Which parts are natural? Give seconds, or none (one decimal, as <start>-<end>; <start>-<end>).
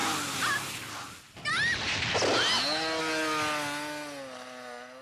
0.0-5.0